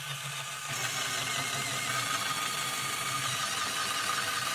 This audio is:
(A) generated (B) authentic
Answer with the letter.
B